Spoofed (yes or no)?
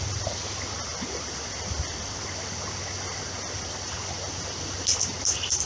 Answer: no